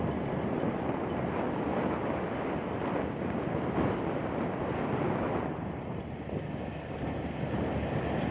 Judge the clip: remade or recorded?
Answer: recorded